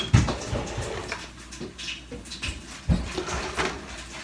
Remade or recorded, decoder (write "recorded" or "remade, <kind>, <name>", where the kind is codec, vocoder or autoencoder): recorded